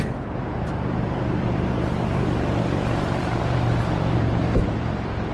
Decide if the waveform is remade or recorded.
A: remade